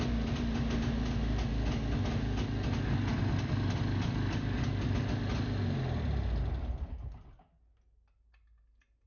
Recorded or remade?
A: recorded